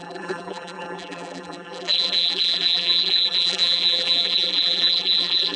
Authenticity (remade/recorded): remade